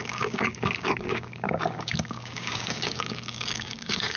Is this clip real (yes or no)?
no